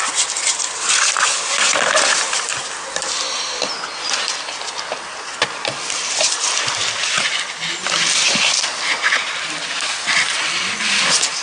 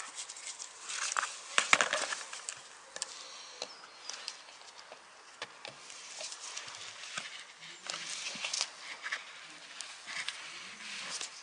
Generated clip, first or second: first